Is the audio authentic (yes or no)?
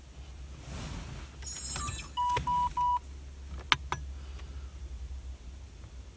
yes